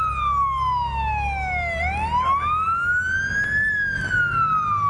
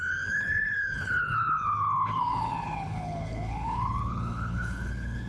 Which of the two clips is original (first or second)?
first